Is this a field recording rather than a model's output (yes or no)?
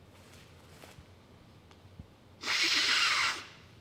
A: yes